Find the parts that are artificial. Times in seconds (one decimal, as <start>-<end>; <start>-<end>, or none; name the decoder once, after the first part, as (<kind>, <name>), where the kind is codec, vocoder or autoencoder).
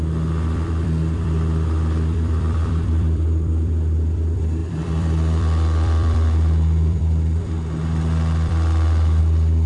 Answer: 0.0-9.7 (vocoder, BigVGAN v2)